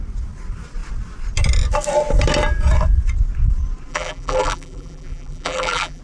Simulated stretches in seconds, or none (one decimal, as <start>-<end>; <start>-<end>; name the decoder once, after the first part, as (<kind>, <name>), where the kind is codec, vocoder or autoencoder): 3.9-6.0 (vocoder, BigVGAN v2)